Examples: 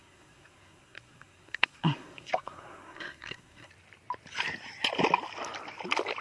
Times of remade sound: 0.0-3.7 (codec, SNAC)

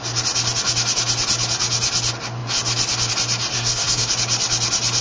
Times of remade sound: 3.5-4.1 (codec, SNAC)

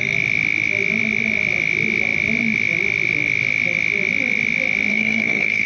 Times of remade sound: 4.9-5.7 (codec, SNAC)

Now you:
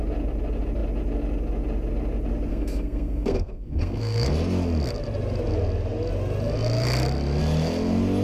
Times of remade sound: 2.5-4.3 (codec, SNAC)

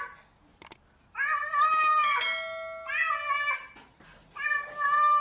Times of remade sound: none